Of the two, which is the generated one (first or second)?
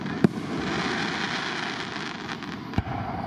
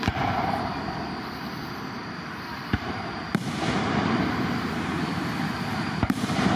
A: second